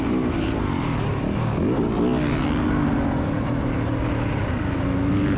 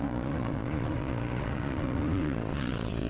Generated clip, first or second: second